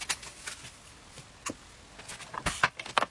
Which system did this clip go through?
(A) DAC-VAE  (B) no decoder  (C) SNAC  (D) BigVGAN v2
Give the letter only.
B